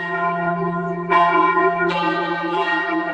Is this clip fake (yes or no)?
yes